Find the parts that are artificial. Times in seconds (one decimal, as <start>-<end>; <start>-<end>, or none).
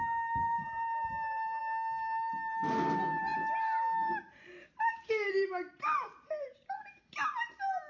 0.5-1.6; 3.3-7.0